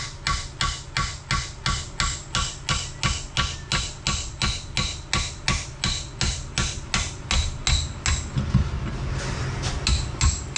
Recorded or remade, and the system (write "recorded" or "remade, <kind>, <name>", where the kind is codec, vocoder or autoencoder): recorded